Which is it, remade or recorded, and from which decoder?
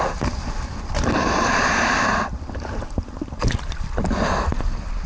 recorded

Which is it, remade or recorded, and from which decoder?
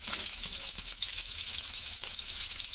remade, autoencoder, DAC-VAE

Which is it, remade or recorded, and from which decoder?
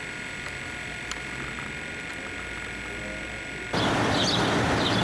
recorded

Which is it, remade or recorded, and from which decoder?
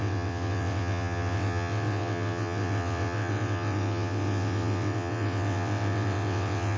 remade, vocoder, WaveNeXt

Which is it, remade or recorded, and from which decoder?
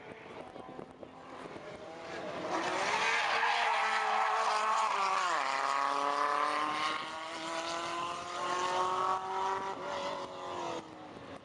recorded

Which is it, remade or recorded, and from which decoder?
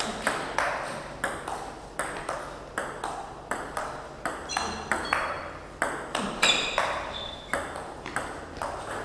remade, vocoder, BigVGAN v2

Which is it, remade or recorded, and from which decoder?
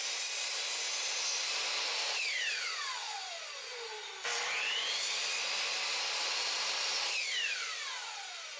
recorded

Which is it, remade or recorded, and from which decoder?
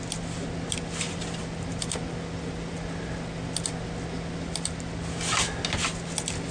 recorded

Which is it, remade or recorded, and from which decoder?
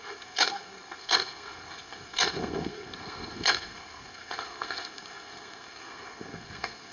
remade, codec, SNAC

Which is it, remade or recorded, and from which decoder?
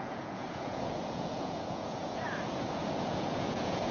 remade, vocoder, Vocos